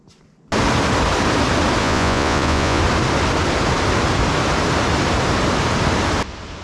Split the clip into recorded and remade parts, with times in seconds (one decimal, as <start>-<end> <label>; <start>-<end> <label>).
0.0-1.8 recorded; 1.8-2.8 remade; 2.8-6.6 recorded